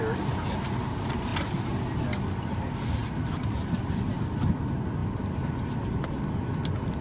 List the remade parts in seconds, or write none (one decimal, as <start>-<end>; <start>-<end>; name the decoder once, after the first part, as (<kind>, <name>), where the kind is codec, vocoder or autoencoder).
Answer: none